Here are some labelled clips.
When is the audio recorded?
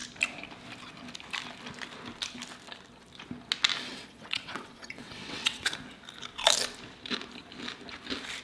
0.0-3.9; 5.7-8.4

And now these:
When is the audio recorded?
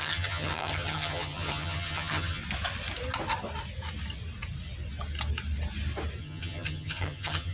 2.4-6.2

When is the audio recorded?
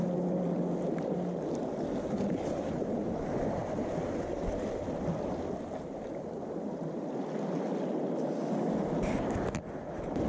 0.0-10.3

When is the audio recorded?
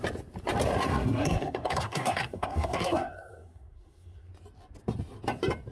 0.0-0.9; 4.3-5.7